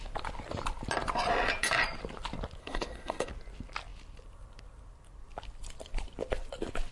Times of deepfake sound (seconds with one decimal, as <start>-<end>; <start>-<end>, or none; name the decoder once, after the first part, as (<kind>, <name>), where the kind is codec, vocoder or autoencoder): 2.6-3.3 (codec, SNAC)